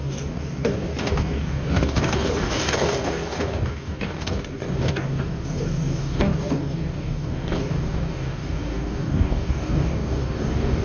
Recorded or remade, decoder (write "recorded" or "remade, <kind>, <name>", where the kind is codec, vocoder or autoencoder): remade, codec, DAC